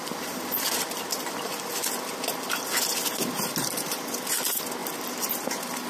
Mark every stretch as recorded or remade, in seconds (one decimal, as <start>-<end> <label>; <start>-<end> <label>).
0.0-4.8 recorded; 4.8-5.5 remade; 5.5-5.9 recorded